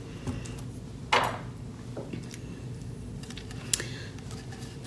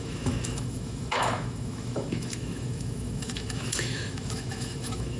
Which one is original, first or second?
first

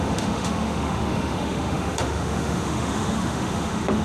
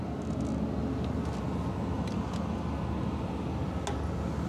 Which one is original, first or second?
second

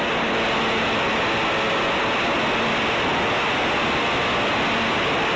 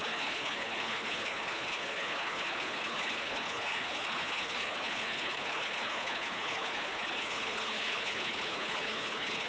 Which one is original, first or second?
first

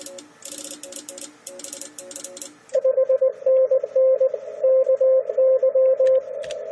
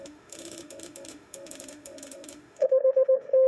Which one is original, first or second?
first